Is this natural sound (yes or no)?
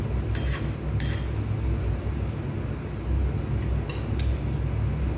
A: yes